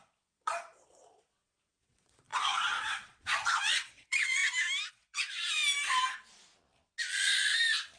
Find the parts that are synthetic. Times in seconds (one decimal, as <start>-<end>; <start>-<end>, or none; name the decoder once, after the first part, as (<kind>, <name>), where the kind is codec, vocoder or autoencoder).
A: 0.0-4.4 (vocoder, Vocos); 4.9-5.6